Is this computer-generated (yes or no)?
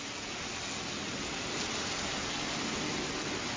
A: no